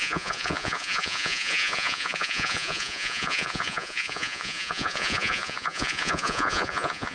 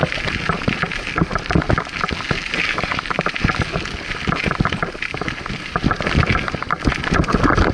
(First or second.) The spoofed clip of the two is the first